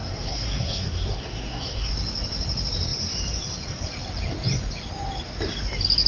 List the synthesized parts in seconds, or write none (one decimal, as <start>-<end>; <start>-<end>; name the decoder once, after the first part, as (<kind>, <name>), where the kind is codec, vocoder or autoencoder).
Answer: 0.0-1.9 (codec, SNAC)